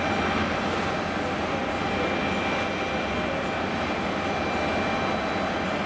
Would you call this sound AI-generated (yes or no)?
no